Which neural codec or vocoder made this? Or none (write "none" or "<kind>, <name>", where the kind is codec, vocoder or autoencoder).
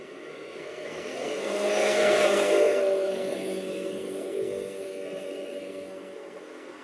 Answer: codec, SNAC